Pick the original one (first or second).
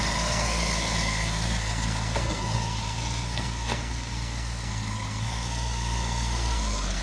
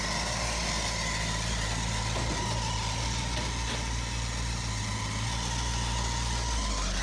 second